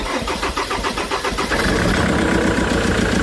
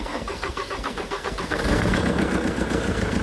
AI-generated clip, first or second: second